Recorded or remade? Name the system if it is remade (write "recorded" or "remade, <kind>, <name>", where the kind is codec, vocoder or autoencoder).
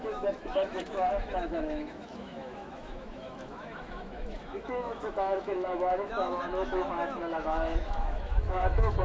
remade, autoencoder, DAC-VAE